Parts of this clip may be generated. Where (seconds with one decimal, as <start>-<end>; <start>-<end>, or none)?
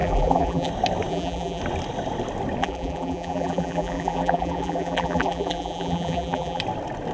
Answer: 0.0-0.7; 1.1-1.6; 2.6-6.6